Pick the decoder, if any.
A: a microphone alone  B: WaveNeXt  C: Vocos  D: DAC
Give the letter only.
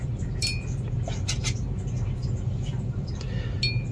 A